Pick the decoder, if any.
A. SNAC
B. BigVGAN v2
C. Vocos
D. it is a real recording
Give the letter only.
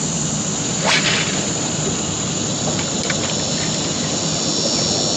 D